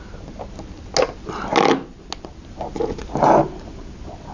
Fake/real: real